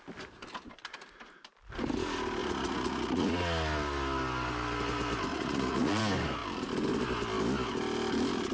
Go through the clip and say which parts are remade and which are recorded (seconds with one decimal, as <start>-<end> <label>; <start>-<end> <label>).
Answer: 0.0-2.4 recorded; 2.4-3.3 remade; 3.3-5.3 recorded; 5.3-6.0 remade; 6.0-8.5 recorded